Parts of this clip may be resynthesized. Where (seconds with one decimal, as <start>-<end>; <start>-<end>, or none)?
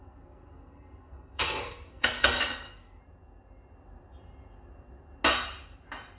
0.0-3.0